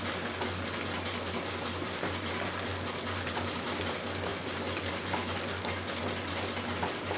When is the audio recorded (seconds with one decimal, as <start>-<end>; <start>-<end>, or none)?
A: 0.0-7.2